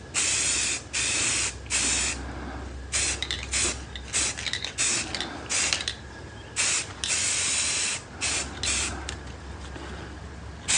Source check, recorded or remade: recorded